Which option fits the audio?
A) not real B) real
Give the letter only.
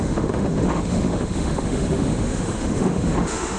A